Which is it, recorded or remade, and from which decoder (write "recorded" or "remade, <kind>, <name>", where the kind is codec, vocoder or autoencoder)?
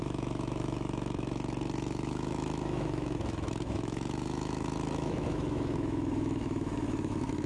remade, autoencoder, DAC-VAE